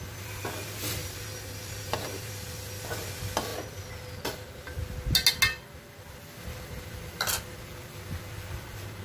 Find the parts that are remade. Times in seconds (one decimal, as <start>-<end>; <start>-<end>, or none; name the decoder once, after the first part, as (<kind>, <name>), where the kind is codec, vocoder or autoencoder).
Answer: 1.0-2.3 (vocoder, BigVGAN v2)